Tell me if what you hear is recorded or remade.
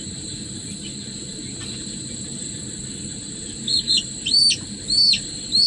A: remade